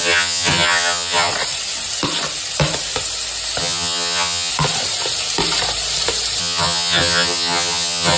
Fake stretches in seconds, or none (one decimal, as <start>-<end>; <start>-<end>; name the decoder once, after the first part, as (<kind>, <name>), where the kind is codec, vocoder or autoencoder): 0.0-1.3 (vocoder, HiFi-GAN); 3.6-4.5; 6.4-8.2